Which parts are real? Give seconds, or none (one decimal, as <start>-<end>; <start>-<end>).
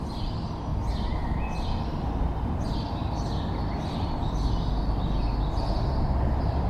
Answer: 0.0-6.7